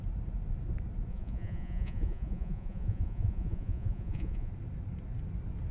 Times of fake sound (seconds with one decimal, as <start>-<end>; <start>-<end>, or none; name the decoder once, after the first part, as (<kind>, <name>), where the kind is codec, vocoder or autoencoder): 1.1-4.5 (vocoder, Vocos)